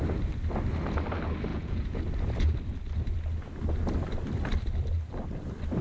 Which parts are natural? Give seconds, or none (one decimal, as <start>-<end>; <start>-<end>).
0.0-1.5; 2.0-5.8